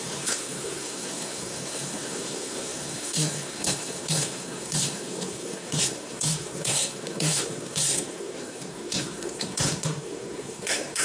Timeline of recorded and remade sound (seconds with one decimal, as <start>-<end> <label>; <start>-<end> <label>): 0.0-11.0 remade